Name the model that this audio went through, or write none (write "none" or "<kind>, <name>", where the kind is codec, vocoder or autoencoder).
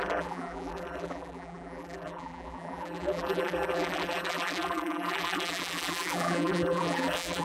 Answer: vocoder, BigVGAN v2